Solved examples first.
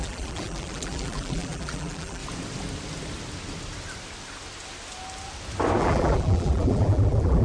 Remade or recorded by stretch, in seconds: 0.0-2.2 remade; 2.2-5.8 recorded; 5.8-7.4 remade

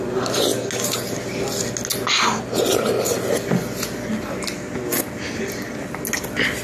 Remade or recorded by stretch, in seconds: 0.0-6.6 recorded

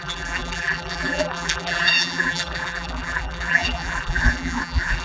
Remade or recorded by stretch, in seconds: 0.0-5.0 remade

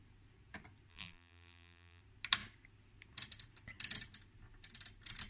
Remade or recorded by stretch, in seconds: 0.0-0.9 recorded; 0.9-2.0 remade; 2.0-5.3 recorded